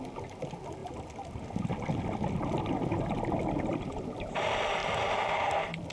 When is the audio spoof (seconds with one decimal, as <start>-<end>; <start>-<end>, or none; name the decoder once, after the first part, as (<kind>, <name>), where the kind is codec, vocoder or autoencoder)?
none